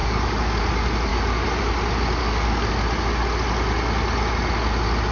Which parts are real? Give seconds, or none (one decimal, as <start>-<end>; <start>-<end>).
0.6-1.1; 1.6-2.2; 2.7-5.1